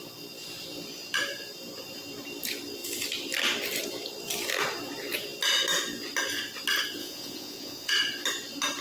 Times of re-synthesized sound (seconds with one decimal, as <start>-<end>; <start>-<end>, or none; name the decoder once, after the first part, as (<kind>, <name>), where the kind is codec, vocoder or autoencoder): 7.0-7.9 (vocoder, Vocos)